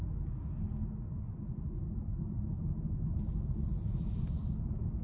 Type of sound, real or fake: real